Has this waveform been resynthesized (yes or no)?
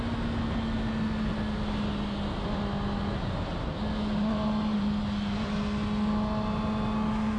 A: no